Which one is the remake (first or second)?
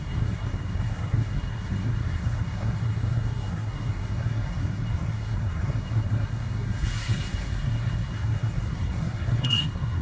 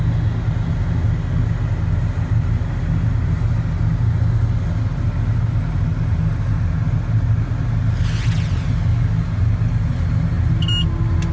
first